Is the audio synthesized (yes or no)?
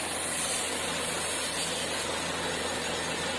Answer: no